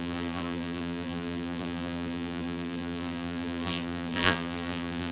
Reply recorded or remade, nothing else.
remade